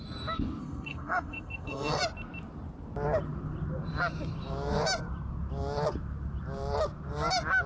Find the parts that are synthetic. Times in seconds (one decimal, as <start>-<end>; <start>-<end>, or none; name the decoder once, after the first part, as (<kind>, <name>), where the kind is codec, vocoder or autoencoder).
0.6-2.0 (codec, SNAC)